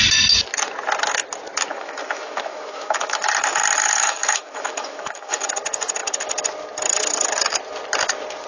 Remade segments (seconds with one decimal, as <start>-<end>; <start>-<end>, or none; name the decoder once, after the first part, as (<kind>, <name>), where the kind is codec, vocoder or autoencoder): 1.7-3.2 (autoencoder, DAC-VAE); 3.8-5.5